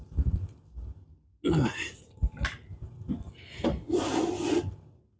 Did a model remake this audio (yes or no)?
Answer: no